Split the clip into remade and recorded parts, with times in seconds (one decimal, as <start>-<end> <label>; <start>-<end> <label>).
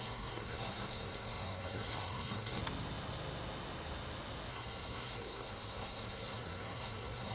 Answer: 0.0-2.6 remade; 2.6-4.5 recorded; 4.5-7.3 remade